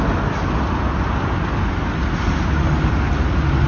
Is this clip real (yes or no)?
yes